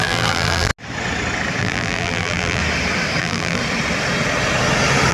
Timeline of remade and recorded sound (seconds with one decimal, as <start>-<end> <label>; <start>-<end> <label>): 0.0-0.7 remade; 0.7-1.6 recorded; 1.6-2.6 remade; 2.6-3.2 recorded; 3.2-3.6 remade; 3.6-5.1 recorded